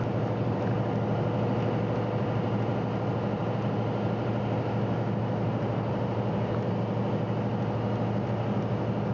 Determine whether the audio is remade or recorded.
recorded